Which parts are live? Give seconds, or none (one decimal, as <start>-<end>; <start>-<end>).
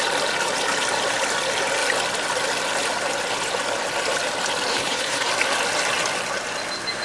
0.0-4.7; 5.3-7.0